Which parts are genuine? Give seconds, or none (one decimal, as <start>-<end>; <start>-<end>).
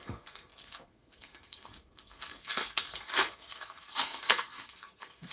none